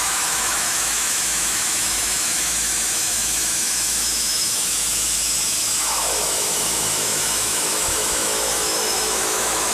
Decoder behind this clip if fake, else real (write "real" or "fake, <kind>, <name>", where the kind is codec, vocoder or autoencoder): fake, autoencoder, DAC-VAE